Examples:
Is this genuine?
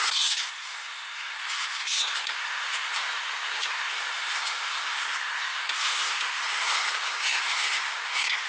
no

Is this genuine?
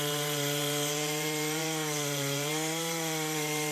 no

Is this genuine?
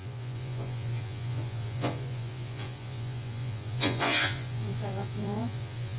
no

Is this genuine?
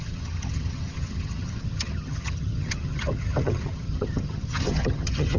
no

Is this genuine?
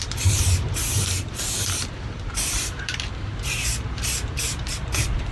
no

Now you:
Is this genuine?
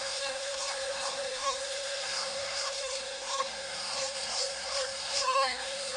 no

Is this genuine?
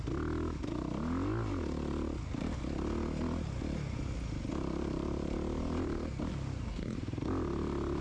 yes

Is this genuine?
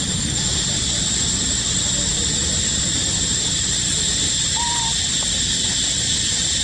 yes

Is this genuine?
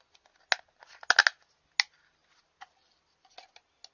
yes